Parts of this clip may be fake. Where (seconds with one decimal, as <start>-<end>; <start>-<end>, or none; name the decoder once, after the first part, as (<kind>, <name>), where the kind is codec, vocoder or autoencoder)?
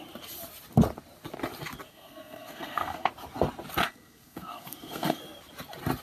1.9-3.1 (codec, SNAC); 3.8-5.2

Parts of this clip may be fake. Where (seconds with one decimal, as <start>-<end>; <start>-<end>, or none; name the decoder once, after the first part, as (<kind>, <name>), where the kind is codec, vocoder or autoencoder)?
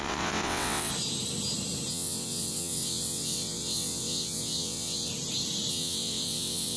0.0-0.9 (vocoder, WaveNeXt); 1.9-5.1; 5.7-6.8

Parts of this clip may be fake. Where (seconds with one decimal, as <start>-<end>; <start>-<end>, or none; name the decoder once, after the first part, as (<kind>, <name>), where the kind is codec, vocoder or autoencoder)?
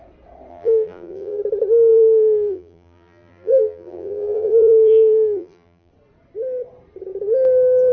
0.5-1.4 (vocoder, BigVGAN v2); 1.9-5.9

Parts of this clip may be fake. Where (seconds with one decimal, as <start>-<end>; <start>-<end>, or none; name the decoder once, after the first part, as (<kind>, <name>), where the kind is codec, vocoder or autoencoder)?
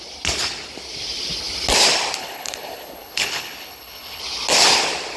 2.2-4.2 (codec, HILCodec)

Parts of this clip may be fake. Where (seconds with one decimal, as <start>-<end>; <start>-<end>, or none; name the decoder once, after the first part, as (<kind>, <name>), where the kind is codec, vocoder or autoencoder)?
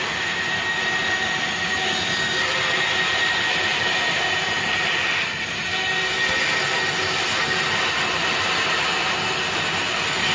none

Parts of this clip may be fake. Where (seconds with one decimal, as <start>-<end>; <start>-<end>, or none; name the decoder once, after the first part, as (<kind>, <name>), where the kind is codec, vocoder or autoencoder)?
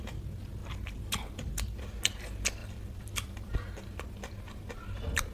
2.6-3.5 (vocoder, BigVGAN v2)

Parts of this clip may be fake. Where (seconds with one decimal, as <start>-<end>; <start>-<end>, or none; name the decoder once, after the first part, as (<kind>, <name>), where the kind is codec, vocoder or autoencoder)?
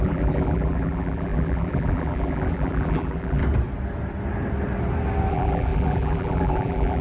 0.0-3.4 (vocoder, BigVGAN v2); 5.3-7.0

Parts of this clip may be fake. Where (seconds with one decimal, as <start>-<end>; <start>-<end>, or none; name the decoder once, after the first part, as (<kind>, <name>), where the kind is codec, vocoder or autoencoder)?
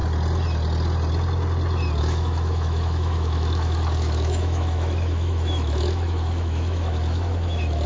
2.0-7.9 (autoencoder, DAC-VAE)